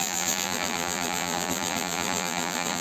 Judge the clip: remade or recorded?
remade